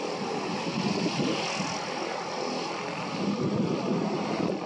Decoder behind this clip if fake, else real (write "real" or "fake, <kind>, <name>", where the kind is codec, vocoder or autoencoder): real